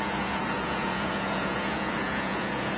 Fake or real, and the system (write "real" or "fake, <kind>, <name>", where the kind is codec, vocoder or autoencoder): fake, vocoder, Vocos